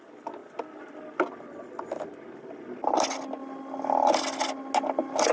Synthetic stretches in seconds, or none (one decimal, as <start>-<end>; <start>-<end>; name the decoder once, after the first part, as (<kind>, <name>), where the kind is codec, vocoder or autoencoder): none